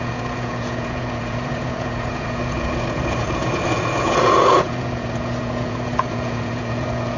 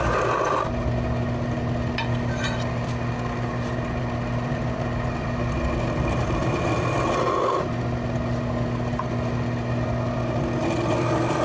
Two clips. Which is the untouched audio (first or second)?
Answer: second